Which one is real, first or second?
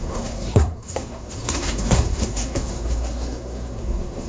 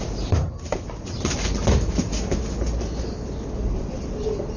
second